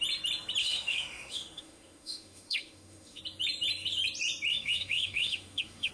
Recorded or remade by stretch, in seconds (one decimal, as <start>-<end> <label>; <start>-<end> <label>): 0.0-0.6 recorded; 0.6-3.2 remade; 3.2-4.5 recorded; 4.5-5.9 remade